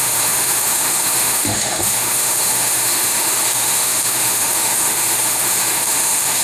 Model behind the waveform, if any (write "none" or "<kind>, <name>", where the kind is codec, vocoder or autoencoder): autoencoder, DAC-VAE